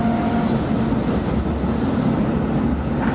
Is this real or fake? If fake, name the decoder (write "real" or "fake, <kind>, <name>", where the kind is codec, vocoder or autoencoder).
real